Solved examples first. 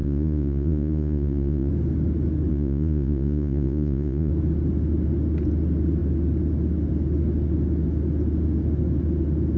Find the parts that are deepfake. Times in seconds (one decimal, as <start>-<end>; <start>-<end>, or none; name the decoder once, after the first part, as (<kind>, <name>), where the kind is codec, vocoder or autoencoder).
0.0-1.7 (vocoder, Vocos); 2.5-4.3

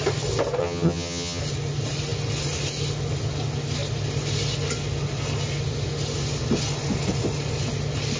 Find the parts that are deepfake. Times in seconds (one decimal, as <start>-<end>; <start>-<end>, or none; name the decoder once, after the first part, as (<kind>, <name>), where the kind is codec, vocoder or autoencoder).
0.6-1.4 (vocoder, HiFi-GAN)

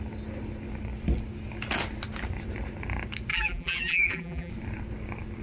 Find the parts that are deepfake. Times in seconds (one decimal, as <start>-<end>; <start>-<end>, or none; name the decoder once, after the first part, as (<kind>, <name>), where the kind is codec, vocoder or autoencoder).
3.3-4.5 (vocoder, BigVGAN v2)